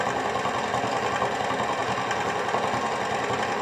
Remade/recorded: recorded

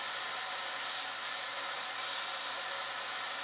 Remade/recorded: recorded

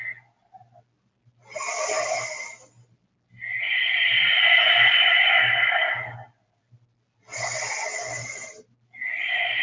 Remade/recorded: recorded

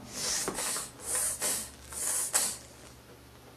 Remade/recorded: recorded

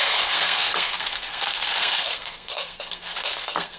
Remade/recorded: remade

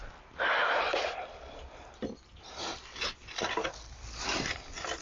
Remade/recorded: remade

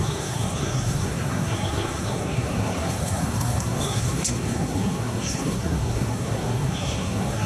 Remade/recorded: remade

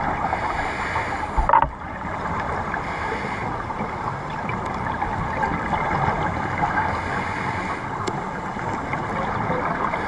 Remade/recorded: recorded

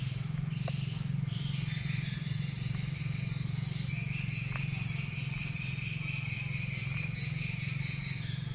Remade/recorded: recorded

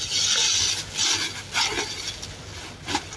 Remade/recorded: recorded